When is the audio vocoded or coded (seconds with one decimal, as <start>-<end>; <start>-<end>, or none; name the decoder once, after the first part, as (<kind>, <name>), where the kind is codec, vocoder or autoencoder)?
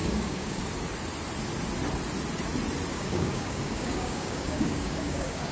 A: 0.0-0.6 (codec, DAC); 2.9-5.5